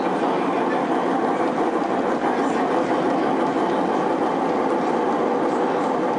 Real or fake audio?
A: real